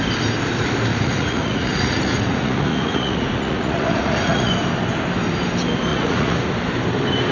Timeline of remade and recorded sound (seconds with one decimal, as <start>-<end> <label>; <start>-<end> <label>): 0.0-0.9 recorded; 0.9-4.5 remade; 4.5-5.9 recorded; 5.9-6.5 remade; 6.5-7.3 recorded